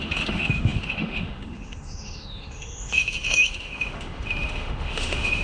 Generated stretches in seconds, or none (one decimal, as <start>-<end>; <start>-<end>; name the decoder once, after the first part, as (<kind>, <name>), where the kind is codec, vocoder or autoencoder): 0.0-5.4 (autoencoder, DAC-VAE)